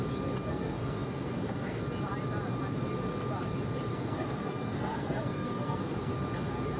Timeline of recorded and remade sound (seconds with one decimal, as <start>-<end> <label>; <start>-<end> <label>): 0.0-0.5 recorded; 0.5-1.8 remade; 1.8-3.9 recorded; 3.9-6.1 remade; 6.1-6.8 recorded